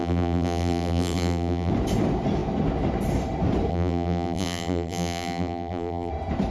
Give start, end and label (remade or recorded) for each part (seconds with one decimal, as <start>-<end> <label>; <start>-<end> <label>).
0.0-1.7 remade; 1.7-3.7 recorded; 3.7-6.1 remade; 6.1-6.5 recorded